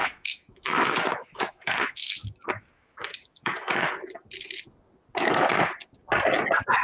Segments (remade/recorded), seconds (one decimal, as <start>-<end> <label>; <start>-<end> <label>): 0.0-3.9 remade; 3.9-6.8 recorded